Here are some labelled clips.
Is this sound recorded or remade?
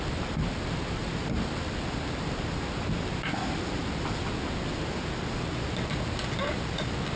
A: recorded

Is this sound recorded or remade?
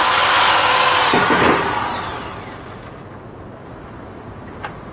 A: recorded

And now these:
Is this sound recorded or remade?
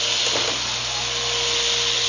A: recorded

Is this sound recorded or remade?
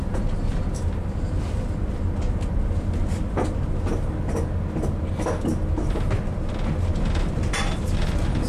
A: recorded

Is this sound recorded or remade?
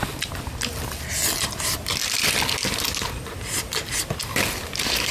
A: recorded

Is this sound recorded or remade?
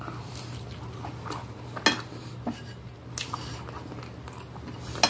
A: recorded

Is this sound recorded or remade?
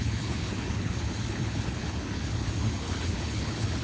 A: remade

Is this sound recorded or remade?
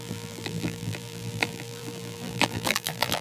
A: remade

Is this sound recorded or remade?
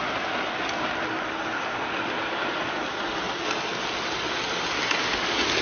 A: recorded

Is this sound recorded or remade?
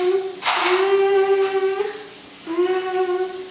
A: recorded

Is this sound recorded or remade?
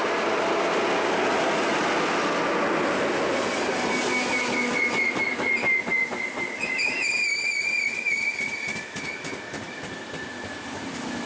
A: recorded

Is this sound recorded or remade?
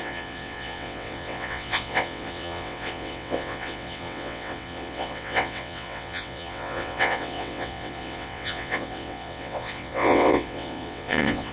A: remade